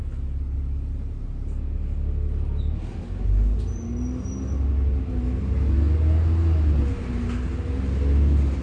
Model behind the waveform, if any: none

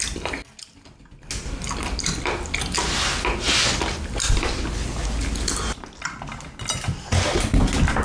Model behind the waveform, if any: none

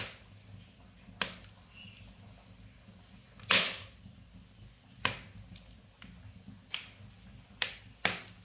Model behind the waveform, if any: none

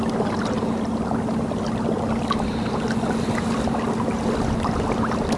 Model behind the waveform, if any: none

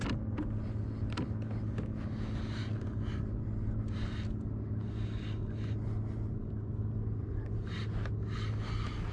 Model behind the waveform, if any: none